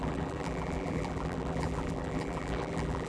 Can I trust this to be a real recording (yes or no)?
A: no